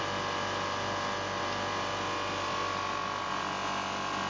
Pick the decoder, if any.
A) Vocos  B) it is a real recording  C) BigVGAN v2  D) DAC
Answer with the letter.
B